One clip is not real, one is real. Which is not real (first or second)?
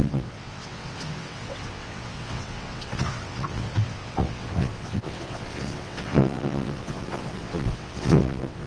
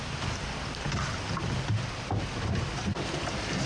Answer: first